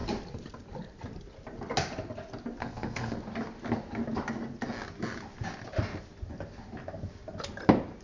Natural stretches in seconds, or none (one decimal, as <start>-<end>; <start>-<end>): 0.0-2.6; 3.2-8.0